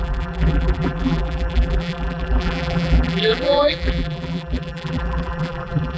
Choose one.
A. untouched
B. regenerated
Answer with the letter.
B